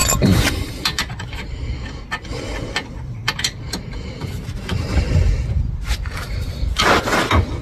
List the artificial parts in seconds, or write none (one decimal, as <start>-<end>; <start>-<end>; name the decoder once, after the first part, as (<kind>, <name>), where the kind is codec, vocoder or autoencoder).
0.0-0.7 (vocoder, BigVGAN v2)